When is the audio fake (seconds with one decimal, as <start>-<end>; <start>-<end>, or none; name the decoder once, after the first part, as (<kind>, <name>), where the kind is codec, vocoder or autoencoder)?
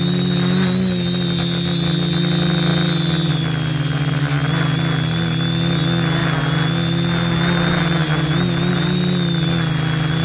none